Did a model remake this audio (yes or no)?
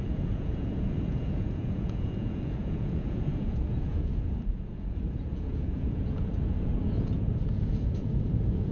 yes